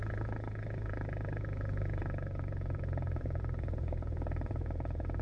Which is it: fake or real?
fake